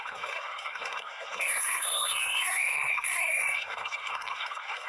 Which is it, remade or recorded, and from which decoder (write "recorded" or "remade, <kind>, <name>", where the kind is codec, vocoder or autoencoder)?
remade, codec, SNAC